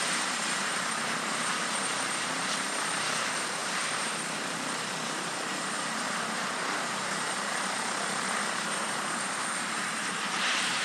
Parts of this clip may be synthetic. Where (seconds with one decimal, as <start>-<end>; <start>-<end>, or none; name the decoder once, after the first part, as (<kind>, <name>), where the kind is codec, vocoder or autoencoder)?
0.0-10.8 (vocoder, BigVGAN v2)